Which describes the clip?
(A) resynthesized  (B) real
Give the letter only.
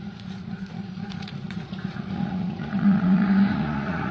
A